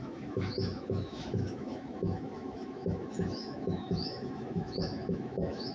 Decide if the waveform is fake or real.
fake